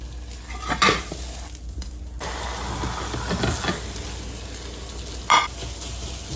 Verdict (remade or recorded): recorded